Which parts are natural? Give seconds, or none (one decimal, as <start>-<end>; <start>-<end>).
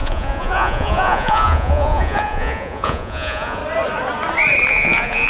3.6-4.7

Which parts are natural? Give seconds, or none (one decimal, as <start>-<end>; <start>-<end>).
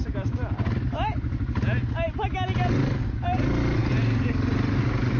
0.0-5.2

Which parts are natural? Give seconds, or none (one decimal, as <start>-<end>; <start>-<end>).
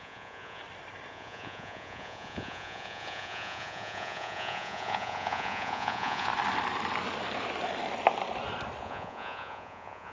0.6-1.1; 6.3-8.8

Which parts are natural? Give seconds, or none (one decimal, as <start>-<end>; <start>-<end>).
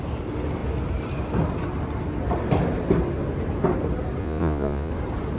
0.0-4.2; 4.9-5.4